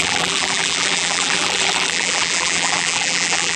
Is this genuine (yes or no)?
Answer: no